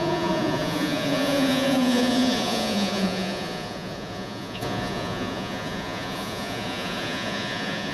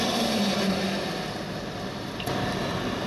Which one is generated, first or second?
first